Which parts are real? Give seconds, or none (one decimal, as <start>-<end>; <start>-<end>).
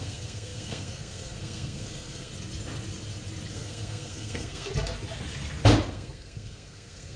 2.3-3.5; 4.7-5.9